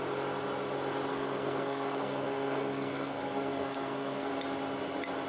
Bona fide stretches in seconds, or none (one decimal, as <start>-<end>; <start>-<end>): 0.0-1.1; 4.3-5.3

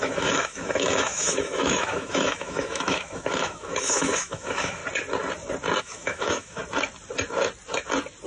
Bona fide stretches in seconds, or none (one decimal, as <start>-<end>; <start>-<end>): 4.8-5.8; 6.6-8.3

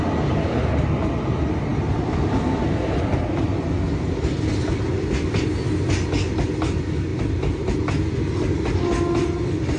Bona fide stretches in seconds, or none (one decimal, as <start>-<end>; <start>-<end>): 0.0-7.1; 7.8-9.8

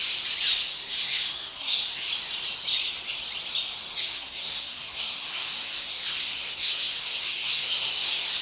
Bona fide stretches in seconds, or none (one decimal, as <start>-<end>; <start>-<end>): 0.0-0.7; 2.1-3.9

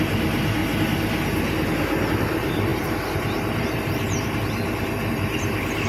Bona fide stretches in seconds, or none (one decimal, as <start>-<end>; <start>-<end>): 0.6-2.1

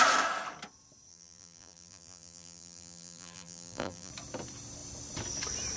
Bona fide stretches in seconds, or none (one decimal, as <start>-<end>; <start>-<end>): 0.0-1.1; 4.1-5.8